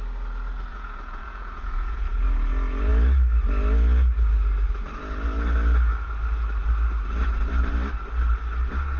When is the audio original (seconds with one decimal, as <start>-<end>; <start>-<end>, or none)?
0.0-0.7; 2.1-9.0